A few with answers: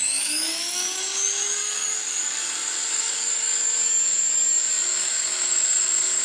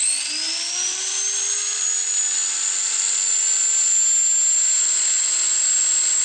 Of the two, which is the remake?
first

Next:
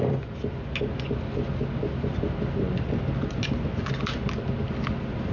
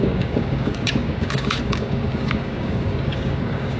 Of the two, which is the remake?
second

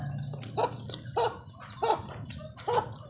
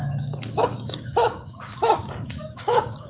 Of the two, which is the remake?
second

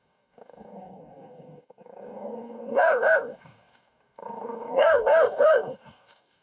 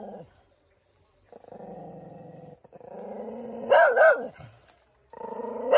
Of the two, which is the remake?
first